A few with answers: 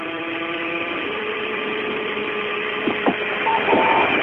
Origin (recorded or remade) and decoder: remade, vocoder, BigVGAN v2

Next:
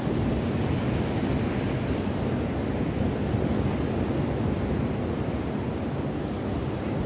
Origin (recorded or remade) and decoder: recorded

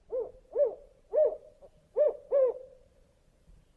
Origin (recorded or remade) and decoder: remade, vocoder, Vocos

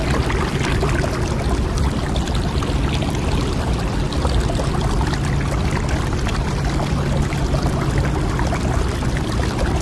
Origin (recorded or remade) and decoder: recorded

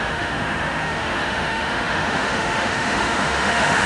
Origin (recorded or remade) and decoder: remade, autoencoder, DAC-VAE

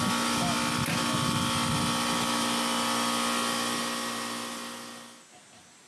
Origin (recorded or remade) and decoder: recorded